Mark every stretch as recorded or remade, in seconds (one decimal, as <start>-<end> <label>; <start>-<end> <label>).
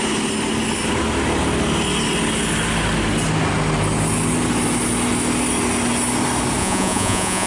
0.0-6.6 recorded; 6.6-7.5 remade